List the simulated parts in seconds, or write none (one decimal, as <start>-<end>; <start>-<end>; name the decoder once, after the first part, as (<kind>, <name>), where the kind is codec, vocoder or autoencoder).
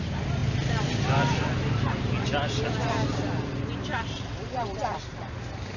3.9-4.5 (vocoder, BigVGAN v2)